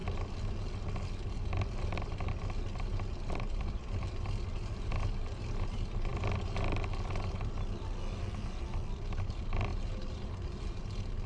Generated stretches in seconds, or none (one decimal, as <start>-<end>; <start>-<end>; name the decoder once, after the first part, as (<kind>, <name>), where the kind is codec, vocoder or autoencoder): none

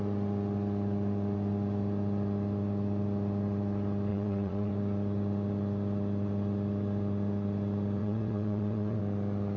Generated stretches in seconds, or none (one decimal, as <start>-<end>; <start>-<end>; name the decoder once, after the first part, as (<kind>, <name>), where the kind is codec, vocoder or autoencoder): 4.1-4.7 (vocoder, Vocos); 8.0-9.0

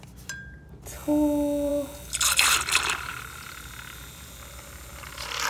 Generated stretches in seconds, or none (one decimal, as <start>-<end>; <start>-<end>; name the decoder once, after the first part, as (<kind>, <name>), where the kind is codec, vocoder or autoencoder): none

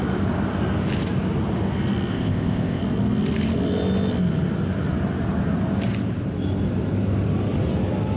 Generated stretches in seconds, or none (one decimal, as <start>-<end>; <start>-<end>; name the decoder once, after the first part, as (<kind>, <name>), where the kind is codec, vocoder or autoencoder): 2.1-2.8 (codec, ZipCodec)

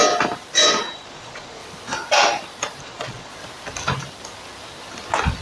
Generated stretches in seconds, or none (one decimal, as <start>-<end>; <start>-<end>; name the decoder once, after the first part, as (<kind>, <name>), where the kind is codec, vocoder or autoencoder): 0.8-1.6 (vocoder, Vocos); 2.8-3.3

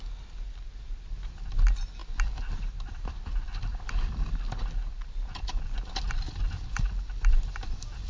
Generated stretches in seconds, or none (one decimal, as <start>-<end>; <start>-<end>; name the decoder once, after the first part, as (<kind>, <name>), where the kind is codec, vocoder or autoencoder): none

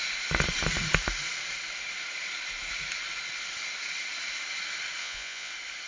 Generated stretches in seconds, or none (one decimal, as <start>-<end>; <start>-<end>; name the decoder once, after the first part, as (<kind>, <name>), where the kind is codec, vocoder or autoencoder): 5.0-5.5 (vocoder, Vocos)

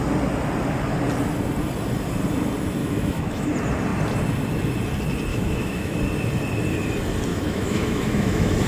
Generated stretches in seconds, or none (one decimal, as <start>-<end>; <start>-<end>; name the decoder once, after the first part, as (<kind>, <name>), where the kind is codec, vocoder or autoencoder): 2.8-3.5 (autoencoder, DAC-VAE); 5.3-6.0; 7.3-8.7